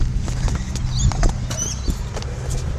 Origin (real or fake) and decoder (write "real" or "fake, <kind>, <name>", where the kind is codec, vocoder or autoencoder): real